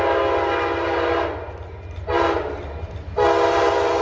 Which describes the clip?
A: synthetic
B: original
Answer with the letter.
B